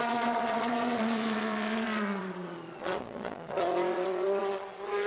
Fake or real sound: fake